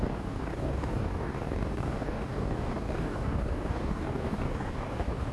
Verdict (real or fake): fake